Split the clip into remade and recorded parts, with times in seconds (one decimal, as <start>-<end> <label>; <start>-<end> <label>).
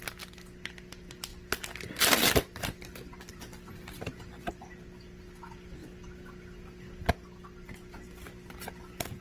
0.0-1.3 recorded; 1.3-4.5 remade; 4.5-9.2 recorded